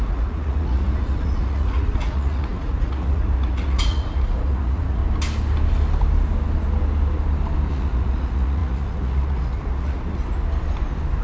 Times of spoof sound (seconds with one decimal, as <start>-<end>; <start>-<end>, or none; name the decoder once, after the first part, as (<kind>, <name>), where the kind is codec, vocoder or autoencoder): 0.0-5.0 (vocoder, Vocos); 7.7-10.2

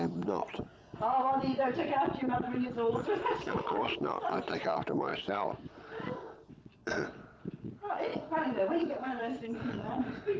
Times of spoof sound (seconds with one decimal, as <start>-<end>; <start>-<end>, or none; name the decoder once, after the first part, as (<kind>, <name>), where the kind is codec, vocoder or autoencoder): 0.0-10.4 (vocoder, Vocos)

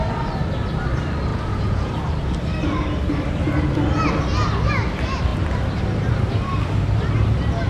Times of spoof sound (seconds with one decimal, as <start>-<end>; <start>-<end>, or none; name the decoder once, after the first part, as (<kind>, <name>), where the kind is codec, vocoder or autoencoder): 1.3-1.9 (vocoder, Vocos)

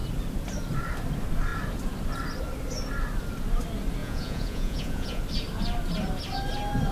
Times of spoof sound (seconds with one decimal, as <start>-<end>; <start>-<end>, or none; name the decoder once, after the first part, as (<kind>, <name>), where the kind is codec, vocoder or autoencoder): 4.0-5.2 (vocoder, Vocos)

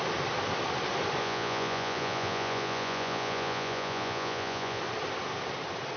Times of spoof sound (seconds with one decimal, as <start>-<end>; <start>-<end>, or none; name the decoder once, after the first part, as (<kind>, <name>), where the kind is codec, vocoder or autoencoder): 1.2-4.8 (vocoder, Vocos)